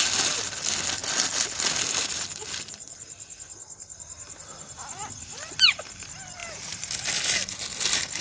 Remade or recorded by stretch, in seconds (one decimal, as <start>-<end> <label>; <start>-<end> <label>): 0.0-8.2 recorded